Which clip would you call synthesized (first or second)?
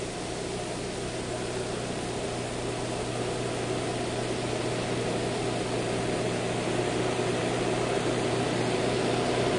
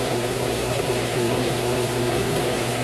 second